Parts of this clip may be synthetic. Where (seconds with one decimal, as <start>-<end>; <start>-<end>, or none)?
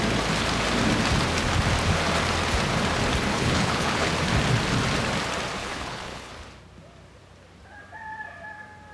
3.3-4.1; 5.6-6.3